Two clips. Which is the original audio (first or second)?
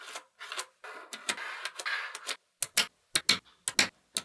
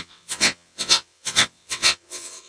first